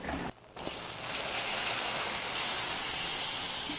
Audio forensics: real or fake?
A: real